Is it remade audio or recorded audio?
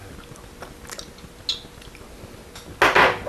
recorded